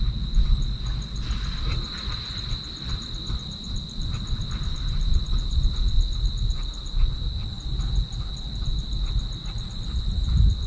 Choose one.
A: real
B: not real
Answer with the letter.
A